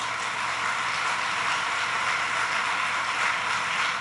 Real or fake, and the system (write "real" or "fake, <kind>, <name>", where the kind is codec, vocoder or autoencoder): real